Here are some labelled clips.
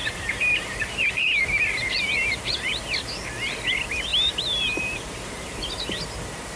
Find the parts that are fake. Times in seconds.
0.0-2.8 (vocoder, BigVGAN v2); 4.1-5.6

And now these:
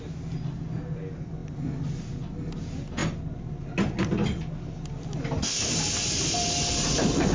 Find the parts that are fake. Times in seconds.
none

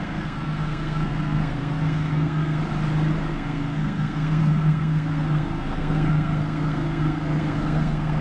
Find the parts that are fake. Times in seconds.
0.0-2.6 (codec, SNAC); 3.3-8.2